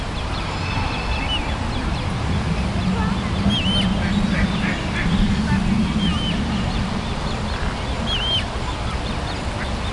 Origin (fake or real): real